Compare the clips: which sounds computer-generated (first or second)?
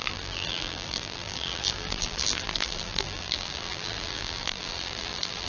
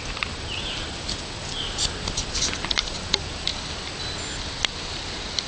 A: first